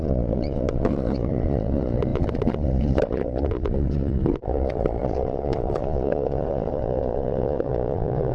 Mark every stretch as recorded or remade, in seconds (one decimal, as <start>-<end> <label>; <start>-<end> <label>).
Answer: 0.0-8.3 remade